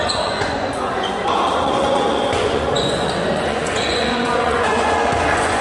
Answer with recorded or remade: remade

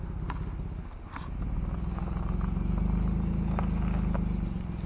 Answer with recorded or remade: recorded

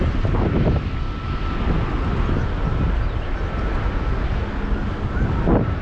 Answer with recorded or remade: recorded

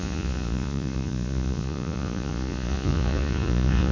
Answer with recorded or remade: remade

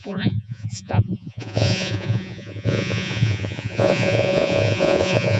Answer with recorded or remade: remade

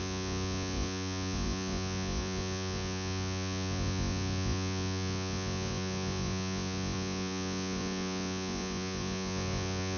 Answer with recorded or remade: remade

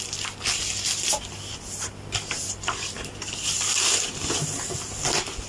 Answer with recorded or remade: recorded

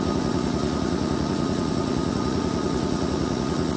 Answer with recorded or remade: remade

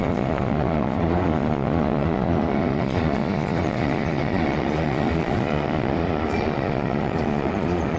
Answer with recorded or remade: remade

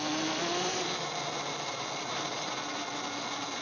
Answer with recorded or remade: recorded